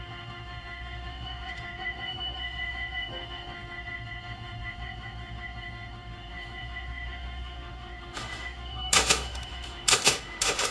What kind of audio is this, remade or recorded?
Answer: remade